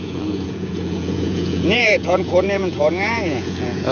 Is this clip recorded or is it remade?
remade